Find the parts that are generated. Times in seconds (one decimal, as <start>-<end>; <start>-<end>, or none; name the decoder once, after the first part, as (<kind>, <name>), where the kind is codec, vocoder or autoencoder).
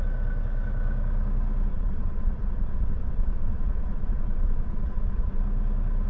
1.7-5.4 (vocoder, Vocos)